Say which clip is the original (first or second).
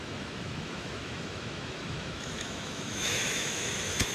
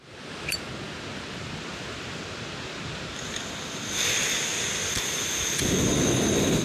second